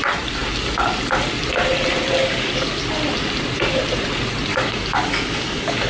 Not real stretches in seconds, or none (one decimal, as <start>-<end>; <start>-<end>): 2.2-2.8; 4.5-5.9